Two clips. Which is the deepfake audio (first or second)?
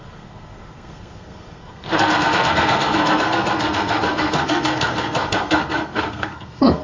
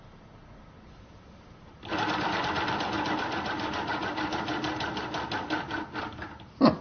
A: first